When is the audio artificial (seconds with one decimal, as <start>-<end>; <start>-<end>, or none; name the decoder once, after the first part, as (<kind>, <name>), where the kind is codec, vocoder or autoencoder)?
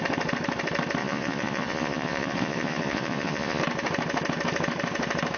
1.0-3.6 (vocoder, Vocos)